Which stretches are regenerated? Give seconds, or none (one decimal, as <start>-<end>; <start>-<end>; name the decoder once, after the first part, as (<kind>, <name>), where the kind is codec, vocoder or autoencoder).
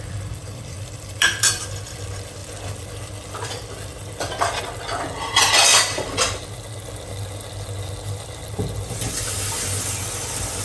0.4-2.0 (vocoder, BigVGAN v2); 2.4-4.6